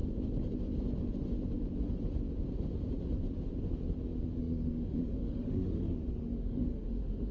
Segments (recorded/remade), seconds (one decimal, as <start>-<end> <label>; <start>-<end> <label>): 0.0-4.4 recorded; 4.4-7.3 remade